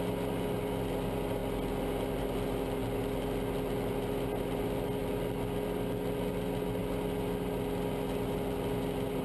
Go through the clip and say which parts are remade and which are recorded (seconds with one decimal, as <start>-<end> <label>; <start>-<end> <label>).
0.0-9.2 recorded